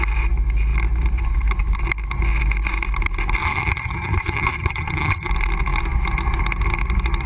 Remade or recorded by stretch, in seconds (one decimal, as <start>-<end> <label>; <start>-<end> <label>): 0.0-3.4 recorded; 3.4-5.3 remade; 5.3-7.3 recorded